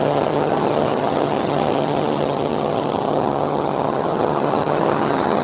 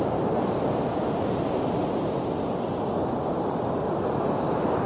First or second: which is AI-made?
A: first